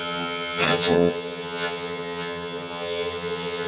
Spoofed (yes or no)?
yes